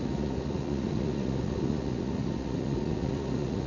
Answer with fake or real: fake